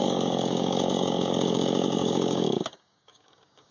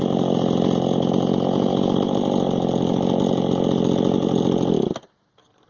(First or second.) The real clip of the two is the second